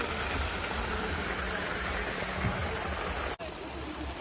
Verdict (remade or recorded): recorded